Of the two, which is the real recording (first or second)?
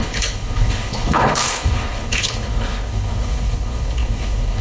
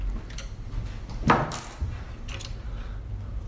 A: second